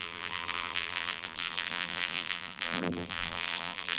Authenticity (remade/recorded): remade